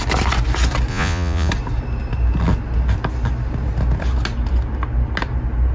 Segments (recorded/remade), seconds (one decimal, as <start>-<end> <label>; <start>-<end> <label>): 0.0-0.9 recorded; 0.9-1.5 remade; 1.5-5.7 recorded